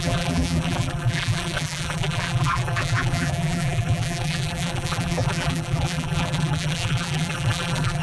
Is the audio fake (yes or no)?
yes